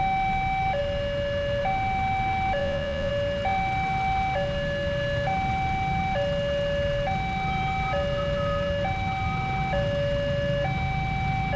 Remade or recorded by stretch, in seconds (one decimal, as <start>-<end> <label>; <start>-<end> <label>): 0.0-2.6 recorded; 2.6-3.1 remade; 3.1-11.6 recorded